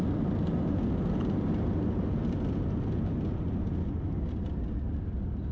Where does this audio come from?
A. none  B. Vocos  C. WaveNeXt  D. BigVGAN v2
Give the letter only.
A